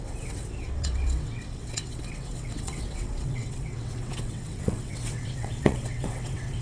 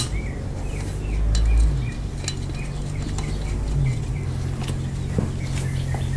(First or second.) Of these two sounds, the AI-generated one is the first